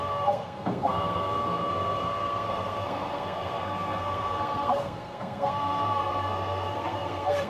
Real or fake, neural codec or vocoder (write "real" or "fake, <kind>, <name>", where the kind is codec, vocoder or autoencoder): fake, codec, SNAC